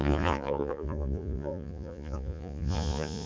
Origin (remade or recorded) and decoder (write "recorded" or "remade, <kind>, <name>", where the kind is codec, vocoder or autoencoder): remade, vocoder, Vocos